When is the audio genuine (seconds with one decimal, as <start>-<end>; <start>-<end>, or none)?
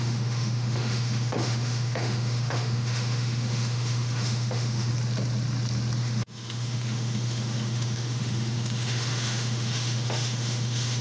4.9-6.0